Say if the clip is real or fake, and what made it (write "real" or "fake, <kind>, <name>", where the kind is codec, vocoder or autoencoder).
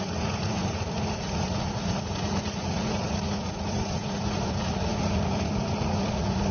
fake, vocoder, Vocos